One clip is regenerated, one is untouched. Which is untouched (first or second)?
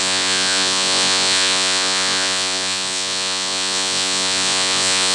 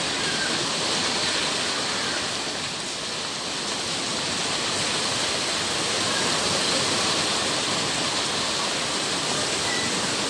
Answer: second